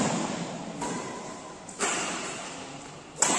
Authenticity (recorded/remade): recorded